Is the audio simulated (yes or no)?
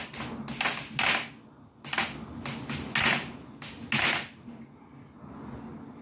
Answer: no